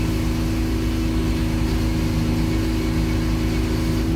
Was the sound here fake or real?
real